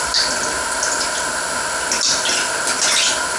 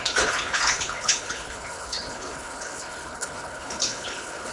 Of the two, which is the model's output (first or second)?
second